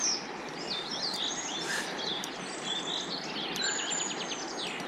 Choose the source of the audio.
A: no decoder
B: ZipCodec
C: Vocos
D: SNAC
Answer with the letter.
A